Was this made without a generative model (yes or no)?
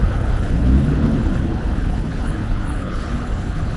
no